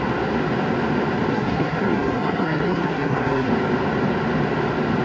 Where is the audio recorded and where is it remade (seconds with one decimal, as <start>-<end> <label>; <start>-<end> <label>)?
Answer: 0.0-1.3 recorded; 1.3-3.5 remade; 3.5-5.0 recorded